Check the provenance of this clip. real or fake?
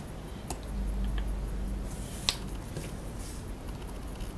real